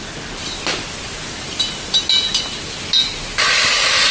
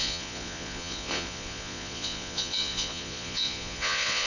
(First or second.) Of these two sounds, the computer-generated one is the second